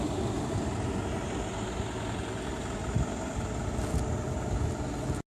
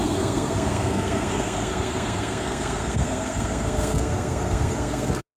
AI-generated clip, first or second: second